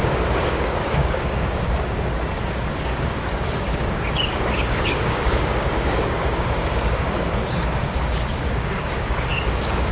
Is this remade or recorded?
remade